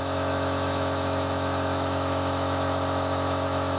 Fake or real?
fake